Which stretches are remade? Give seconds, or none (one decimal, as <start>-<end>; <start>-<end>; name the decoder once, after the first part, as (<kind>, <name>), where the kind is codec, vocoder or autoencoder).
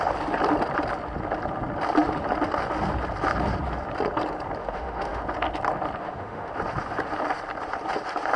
4.6-5.2 (autoencoder, DAC-VAE); 6.0-6.5